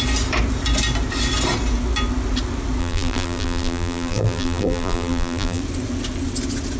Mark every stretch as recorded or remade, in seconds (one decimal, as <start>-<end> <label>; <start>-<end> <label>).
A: 0.0-2.8 recorded; 2.8-5.6 remade; 5.6-6.8 recorded

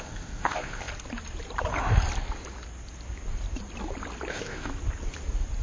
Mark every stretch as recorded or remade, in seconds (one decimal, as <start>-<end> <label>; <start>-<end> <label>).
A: 0.0-0.9 remade; 0.9-4.3 recorded; 4.3-4.7 remade; 4.7-5.6 recorded

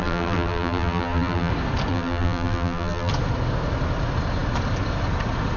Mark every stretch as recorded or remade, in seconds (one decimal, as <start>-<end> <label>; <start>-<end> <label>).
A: 0.0-1.5 remade; 1.5-1.9 recorded; 1.9-3.1 remade; 3.1-5.6 recorded

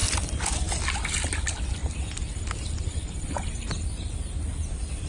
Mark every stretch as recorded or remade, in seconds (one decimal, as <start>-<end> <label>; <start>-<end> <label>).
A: 0.0-0.8 remade; 0.8-1.8 recorded; 1.8-5.1 remade

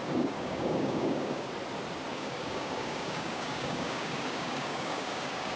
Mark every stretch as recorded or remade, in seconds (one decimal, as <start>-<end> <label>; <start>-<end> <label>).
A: 0.0-1.5 remade; 1.5-2.1 recorded; 2.1-5.6 remade